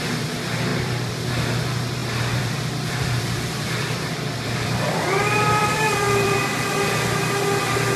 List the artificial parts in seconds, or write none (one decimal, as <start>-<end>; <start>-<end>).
0.7-1.3; 2.0-6.4